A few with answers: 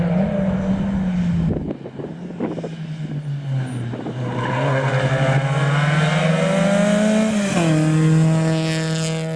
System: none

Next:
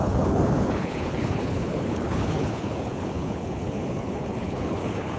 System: codec, HILCodec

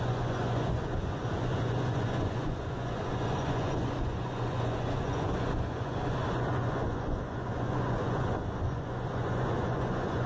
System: vocoder, Vocos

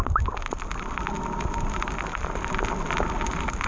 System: none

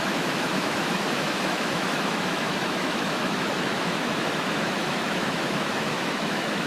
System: autoencoder, DAC-VAE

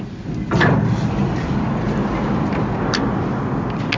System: none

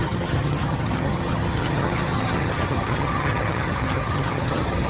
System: vocoder, HiFi-GAN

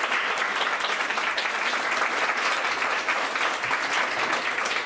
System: none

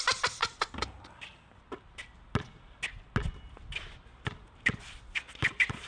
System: none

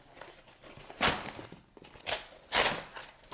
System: none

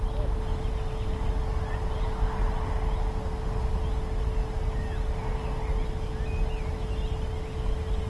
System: none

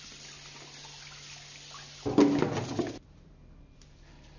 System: none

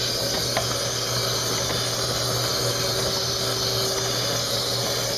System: none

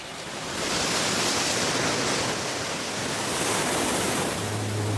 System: none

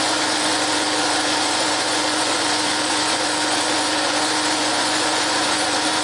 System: vocoder, Vocos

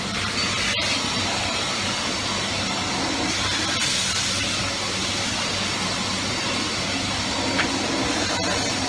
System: none